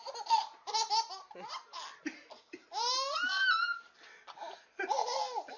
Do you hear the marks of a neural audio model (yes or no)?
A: no